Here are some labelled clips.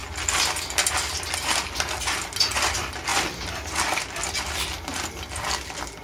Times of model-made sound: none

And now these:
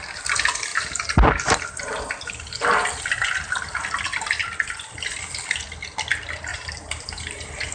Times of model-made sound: 6.5-7.7

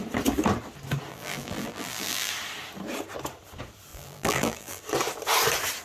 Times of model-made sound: 1.1-2.3; 3.9-4.8